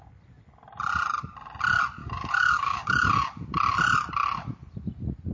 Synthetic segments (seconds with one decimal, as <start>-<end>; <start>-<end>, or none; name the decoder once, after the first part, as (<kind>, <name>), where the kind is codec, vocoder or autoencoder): 2.0-3.1 (codec, DAC)